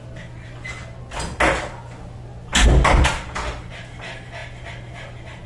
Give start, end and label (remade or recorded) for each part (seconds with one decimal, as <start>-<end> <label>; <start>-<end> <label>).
0.0-5.5 recorded